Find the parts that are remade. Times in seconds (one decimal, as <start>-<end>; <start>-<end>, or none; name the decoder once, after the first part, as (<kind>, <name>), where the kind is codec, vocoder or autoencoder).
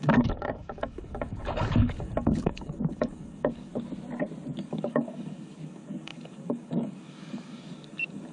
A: 0.0-3.7 (codec, DAC); 4.5-8.3